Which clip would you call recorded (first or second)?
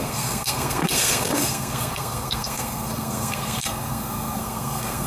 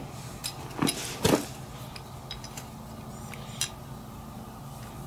second